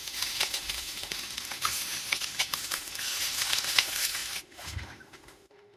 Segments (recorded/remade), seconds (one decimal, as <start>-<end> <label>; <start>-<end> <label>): 0.0-5.8 remade